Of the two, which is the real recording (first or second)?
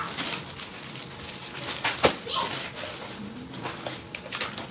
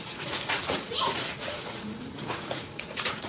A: first